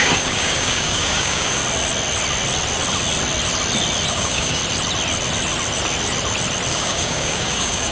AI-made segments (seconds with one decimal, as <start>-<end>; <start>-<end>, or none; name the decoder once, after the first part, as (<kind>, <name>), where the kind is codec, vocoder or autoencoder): 0.0-1.6 (codec, DAC); 4.1-4.6; 6.7-7.9